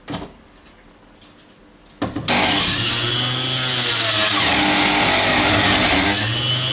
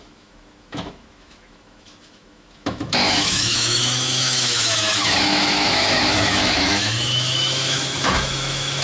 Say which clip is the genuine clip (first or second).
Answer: first